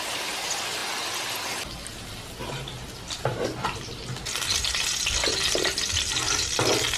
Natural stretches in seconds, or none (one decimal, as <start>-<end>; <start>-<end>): 0.0-7.0